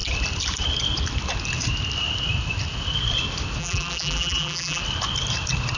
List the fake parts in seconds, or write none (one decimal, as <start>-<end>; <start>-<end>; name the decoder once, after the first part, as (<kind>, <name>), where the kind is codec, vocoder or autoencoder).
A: 3.6-4.8 (vocoder, BigVGAN v2)